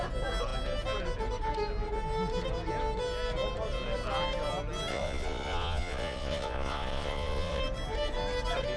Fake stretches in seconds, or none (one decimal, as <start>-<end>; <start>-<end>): 4.9-7.6